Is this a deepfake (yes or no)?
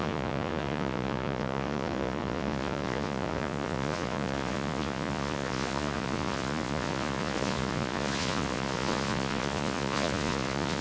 yes